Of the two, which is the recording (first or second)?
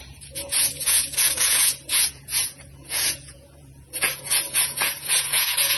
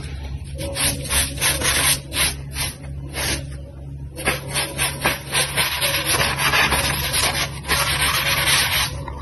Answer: second